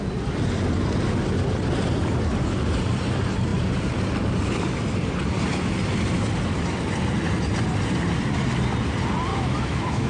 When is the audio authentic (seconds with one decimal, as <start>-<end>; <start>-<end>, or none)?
0.0-9.3